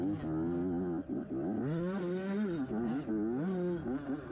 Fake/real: real